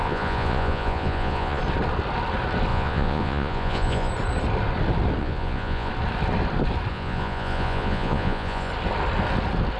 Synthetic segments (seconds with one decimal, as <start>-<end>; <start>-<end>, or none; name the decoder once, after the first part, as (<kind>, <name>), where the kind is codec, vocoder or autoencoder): 0.0-1.6 (vocoder, Vocos); 2.7-4.1; 5.2-5.9; 6.9-8.7

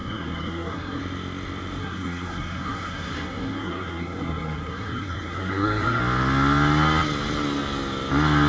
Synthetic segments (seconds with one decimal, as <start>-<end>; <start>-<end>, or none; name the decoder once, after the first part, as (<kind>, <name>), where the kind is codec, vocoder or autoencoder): 0.0-1.0 (codec, SNAC); 1.8-6.0

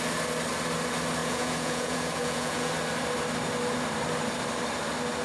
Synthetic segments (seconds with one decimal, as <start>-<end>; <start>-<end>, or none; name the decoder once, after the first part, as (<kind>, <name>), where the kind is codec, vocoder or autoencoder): 1.2-2.7 (vocoder, Vocos)

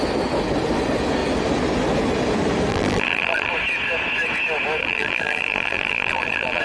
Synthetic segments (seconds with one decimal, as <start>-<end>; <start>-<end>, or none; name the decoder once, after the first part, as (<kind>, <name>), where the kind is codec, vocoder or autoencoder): 2.7-3.5 (vocoder, BigVGAN v2); 4.8-6.6

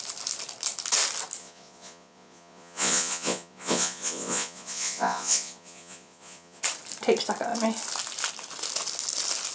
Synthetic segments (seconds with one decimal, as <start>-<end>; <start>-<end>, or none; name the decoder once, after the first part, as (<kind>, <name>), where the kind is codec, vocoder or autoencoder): 1.4-6.6 (vocoder, Vocos)

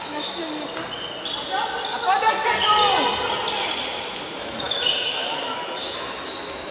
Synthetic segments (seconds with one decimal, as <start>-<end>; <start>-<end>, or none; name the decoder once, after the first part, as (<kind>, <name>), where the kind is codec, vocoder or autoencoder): 0.0-0.4 (autoencoder, DAC-VAE); 4.4-6.7

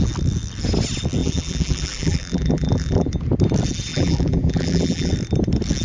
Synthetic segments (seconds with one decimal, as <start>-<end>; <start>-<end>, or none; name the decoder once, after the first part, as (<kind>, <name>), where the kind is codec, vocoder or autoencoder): 1.2-3.1 (vocoder, BigVGAN v2); 3.9-5.1